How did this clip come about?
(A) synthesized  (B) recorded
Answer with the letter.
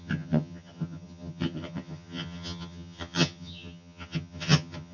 A